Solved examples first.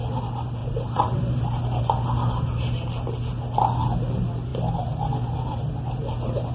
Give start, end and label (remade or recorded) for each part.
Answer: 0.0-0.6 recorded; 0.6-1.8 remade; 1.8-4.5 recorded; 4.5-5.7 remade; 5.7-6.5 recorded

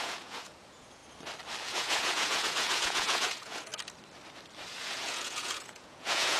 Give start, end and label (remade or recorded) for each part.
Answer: 0.0-1.0 remade; 1.0-1.6 recorded; 1.6-3.7 remade; 3.7-4.7 recorded; 4.7-6.4 remade